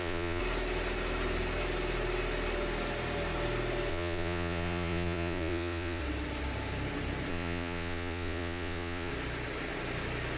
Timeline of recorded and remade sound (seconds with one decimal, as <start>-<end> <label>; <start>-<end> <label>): 0.0-0.4 remade; 0.4-3.9 recorded; 3.9-6.0 remade; 6.0-7.3 recorded; 7.3-9.1 remade; 9.1-10.4 recorded